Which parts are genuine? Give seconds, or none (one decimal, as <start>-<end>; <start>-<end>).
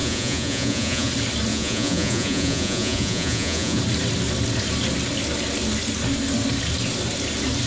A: 1.1-1.5; 3.8-7.7